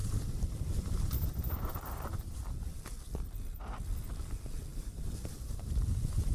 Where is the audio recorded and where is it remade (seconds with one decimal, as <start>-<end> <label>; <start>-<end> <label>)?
0.0-2.8 remade; 2.8-4.7 recorded; 4.7-5.7 remade; 5.7-6.3 recorded